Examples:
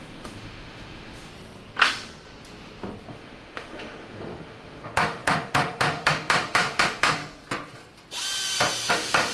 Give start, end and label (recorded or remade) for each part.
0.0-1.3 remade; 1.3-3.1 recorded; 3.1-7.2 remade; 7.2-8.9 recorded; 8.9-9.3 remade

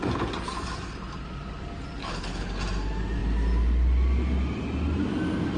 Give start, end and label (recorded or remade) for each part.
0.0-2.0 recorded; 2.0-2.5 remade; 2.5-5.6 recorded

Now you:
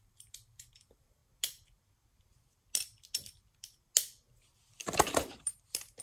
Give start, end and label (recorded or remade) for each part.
0.0-1.2 remade; 1.2-4.8 recorded; 4.8-6.0 remade

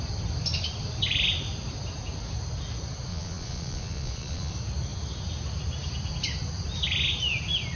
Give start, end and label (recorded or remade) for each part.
0.0-3.1 recorded; 3.1-4.5 remade; 4.5-7.8 recorded